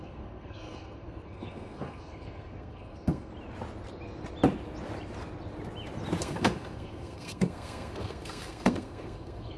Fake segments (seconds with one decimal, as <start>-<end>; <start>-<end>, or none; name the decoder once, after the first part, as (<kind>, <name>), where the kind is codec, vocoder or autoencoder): 0.0-3.3 (codec, SNAC); 6.2-9.6